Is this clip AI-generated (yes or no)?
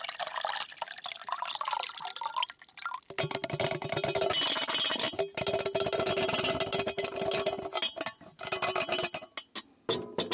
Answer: no